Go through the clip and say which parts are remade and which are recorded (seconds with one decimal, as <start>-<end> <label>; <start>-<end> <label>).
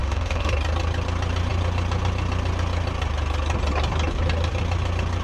0.0-0.5 remade; 0.5-5.2 recorded